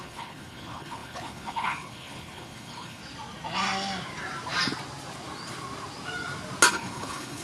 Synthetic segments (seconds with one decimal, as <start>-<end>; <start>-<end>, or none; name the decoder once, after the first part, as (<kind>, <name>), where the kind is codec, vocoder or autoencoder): 0.0-3.0 (codec, HILCodec); 6.7-7.4